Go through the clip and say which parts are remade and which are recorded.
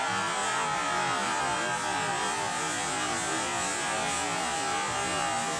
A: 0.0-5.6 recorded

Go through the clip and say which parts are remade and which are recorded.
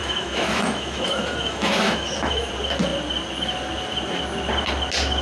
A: 0.0-2.5 remade; 2.5-5.2 recorded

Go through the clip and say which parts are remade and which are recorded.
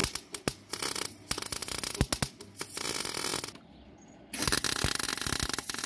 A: 0.0-5.9 recorded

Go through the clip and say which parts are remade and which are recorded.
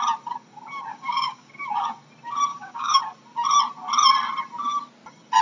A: 0.0-0.9 recorded; 0.9-1.5 remade; 1.5-2.5 recorded; 2.5-3.0 remade; 3.0-5.4 recorded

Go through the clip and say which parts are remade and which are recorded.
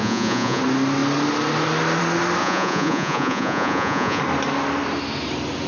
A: 0.0-0.6 remade; 0.6-2.4 recorded; 2.4-4.2 remade; 4.2-5.7 recorded